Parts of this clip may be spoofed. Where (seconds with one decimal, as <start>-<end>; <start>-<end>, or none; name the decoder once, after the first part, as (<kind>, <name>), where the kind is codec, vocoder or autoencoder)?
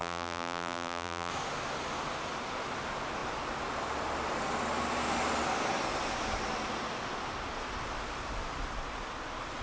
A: 0.0-1.3 (vocoder, BigVGAN v2)